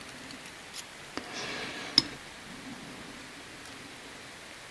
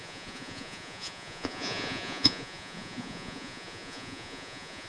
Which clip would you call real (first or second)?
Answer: first